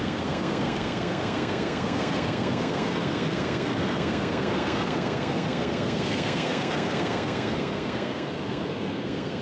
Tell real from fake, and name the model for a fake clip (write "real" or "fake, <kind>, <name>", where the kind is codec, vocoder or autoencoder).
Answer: fake, codec, SNAC